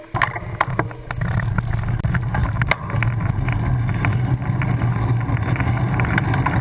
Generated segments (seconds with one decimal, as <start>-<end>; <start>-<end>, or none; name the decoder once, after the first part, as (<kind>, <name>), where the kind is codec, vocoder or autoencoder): none